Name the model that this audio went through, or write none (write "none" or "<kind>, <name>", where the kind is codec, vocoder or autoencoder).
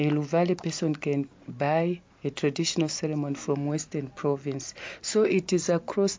none